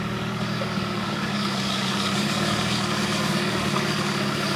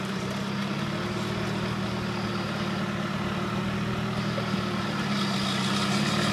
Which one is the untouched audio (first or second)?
second